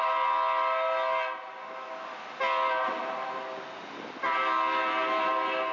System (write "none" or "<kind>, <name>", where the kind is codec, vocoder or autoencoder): none